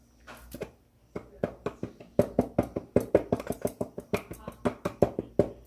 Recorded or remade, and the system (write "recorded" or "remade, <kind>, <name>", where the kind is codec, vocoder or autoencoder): recorded